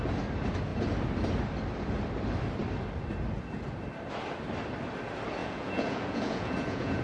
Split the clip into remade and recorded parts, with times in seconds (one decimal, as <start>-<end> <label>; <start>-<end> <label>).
0.0-5.4 recorded; 5.4-7.0 remade